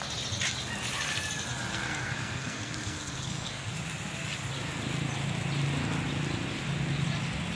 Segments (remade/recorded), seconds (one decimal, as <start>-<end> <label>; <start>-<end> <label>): 0.0-1.7 recorded; 1.7-3.7 remade; 3.7-7.6 recorded